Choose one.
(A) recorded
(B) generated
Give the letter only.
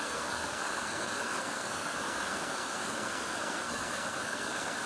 B